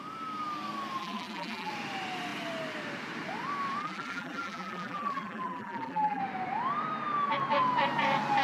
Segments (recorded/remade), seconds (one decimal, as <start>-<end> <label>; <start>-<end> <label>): 0.0-1.0 recorded; 1.0-1.7 remade; 1.7-3.8 recorded; 3.8-6.2 remade; 6.2-8.4 recorded